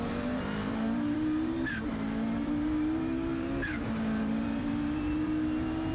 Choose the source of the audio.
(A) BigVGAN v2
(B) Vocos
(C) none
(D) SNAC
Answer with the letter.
A